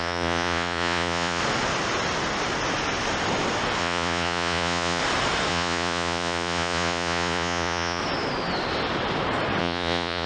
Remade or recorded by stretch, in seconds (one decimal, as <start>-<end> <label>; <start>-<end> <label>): 0.0-1.4 remade; 1.4-3.8 recorded; 3.8-5.0 remade; 5.0-5.5 recorded; 5.5-8.0 remade; 8.0-9.6 recorded; 9.6-10.3 remade